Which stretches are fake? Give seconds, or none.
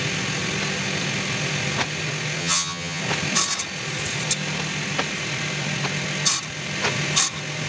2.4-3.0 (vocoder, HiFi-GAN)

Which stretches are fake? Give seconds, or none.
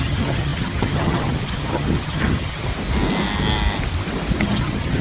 0.0-2.7 (vocoder, HiFi-GAN); 4.4-5.0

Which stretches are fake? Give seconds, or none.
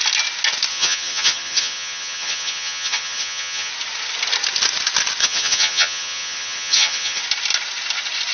0.7-3.7 (vocoder, HiFi-GAN); 5.2-7.2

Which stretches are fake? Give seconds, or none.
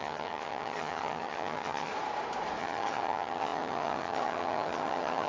0.0-1.9 (vocoder, HiFi-GAN); 2.6-5.3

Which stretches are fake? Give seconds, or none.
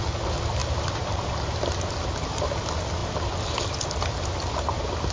none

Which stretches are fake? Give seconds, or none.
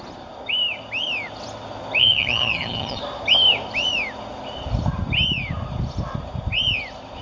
2.0-3.0 (vocoder, HiFi-GAN)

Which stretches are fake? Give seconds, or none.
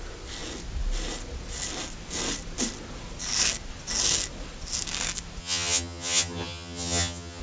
5.4-7.4 (vocoder, HiFi-GAN)